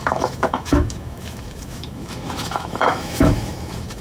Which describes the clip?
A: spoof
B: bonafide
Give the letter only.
A